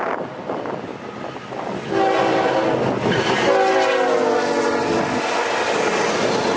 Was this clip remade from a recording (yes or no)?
no